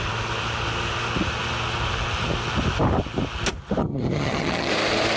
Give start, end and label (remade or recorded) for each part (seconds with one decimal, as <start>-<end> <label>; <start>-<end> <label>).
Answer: 0.0-3.8 recorded; 3.8-4.7 remade; 4.7-5.2 recorded